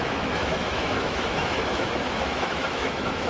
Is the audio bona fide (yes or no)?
no